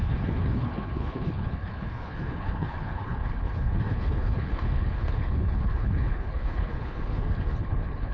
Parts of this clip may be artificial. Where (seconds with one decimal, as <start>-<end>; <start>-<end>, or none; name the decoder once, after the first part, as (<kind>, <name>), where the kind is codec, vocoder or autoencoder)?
0.0-8.1 (codec, HILCodec)